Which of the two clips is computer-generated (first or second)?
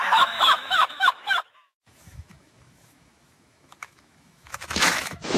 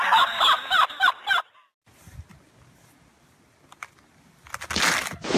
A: first